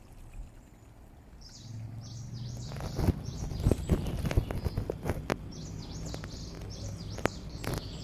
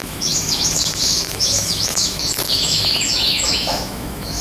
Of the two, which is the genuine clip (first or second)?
first